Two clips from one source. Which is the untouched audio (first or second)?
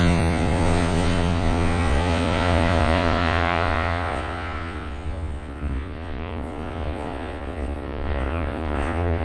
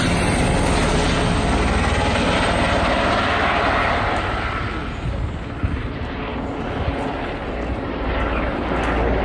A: second